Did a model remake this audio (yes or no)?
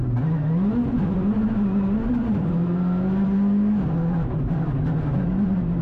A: no